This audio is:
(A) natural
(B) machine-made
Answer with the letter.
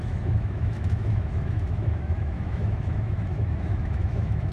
B